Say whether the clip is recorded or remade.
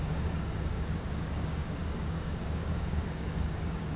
remade